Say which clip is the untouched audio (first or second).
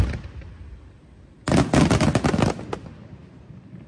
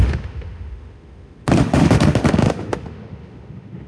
first